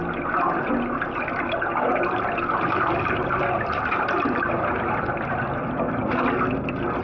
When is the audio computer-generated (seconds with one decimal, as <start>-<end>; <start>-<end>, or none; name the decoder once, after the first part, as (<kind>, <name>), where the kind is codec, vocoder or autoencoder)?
1.9-6.1 (vocoder, BigVGAN v2)